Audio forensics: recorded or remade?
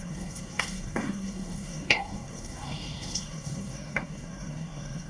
remade